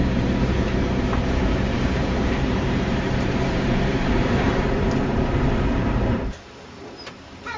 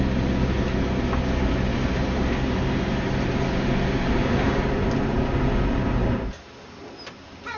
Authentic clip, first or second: second